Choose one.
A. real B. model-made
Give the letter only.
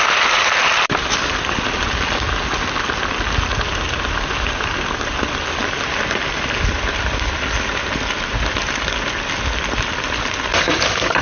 A